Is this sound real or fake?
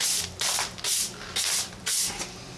real